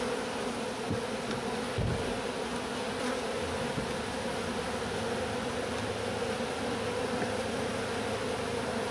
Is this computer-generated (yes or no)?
no